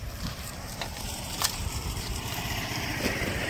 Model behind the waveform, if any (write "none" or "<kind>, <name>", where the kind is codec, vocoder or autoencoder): vocoder, BigVGAN v2